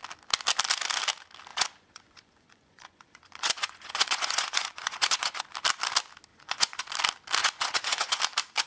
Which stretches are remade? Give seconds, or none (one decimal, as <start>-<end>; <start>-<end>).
1.5-5.4; 6.3-6.8; 7.4-8.2